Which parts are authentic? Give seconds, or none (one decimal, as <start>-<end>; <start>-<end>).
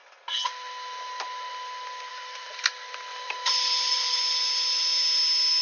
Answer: 0.0-2.1; 2.6-3.1; 4.2-5.6